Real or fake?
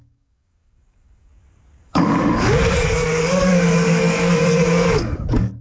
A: fake